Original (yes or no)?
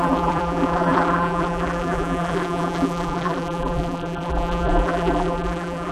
no